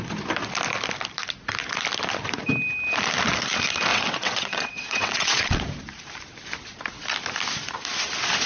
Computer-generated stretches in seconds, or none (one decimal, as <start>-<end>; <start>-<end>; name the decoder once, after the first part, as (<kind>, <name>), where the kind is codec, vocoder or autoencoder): 3.9-5.6 (vocoder, WaveNeXt)